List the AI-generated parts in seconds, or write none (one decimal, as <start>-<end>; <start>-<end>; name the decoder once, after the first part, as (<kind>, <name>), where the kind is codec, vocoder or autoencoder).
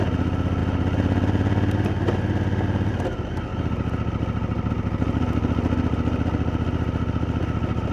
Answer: none